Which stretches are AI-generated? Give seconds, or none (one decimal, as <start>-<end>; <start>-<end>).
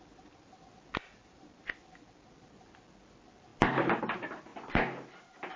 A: 1.2-1.8